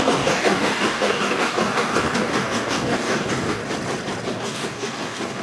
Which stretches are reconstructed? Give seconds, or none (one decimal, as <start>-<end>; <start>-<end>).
0.0-3.6; 4.3-5.4